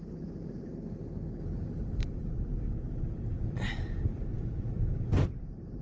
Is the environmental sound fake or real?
real